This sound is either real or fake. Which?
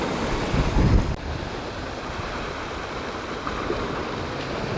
real